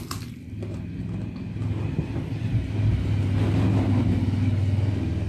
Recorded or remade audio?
recorded